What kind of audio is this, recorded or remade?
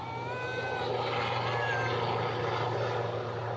recorded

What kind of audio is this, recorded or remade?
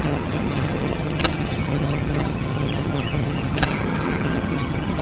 remade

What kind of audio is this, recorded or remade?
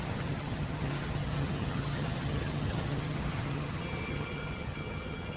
remade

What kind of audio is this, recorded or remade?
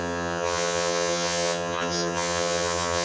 remade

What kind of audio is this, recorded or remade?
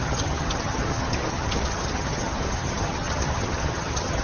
remade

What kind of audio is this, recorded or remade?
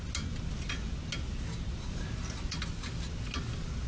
recorded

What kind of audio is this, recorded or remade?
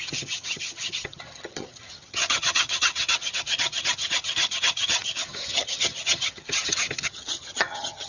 remade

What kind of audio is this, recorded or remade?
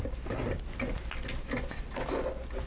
recorded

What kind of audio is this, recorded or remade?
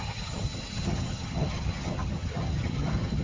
remade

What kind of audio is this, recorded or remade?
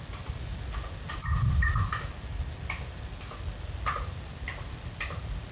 recorded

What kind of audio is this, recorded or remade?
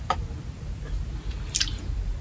recorded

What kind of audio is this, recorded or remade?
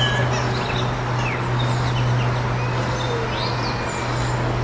recorded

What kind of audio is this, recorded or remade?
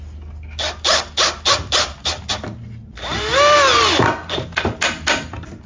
recorded